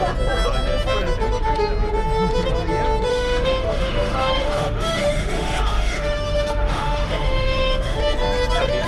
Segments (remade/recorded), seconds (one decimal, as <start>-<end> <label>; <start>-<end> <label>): 0.0-3.1 recorded; 3.1-8.0 remade; 8.0-8.9 recorded